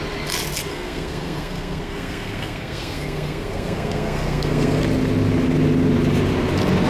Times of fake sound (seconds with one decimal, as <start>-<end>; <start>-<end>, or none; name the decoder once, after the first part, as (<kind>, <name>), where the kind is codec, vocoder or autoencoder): 0.7-4.8 (codec, SNAC)